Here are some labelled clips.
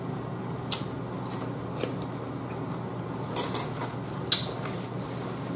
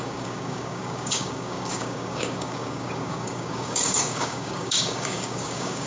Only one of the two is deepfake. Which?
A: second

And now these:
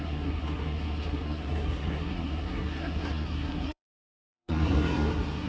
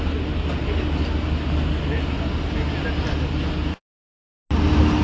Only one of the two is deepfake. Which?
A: first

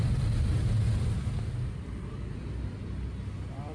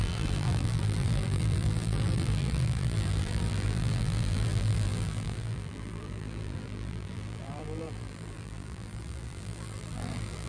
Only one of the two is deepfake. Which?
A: second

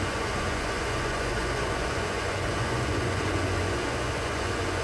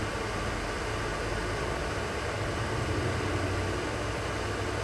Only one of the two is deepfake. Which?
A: first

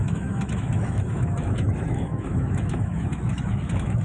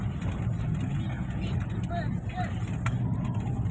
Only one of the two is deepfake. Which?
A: first